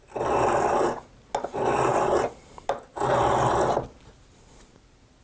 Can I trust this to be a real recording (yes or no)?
yes